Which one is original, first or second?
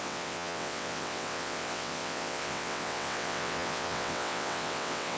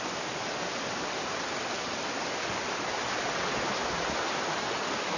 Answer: second